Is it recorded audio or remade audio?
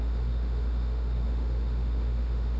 remade